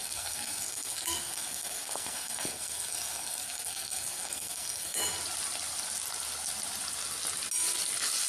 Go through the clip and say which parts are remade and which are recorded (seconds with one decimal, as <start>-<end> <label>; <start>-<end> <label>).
0.0-5.0 remade; 5.0-8.3 recorded